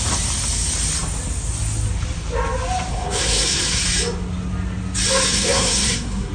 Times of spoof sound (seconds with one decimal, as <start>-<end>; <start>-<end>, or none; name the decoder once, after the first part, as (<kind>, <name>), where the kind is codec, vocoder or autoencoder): 2.9-3.8 (codec, SNAC); 5.3-6.3